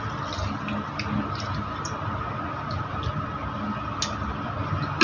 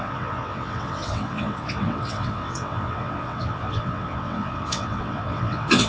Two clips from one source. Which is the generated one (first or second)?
second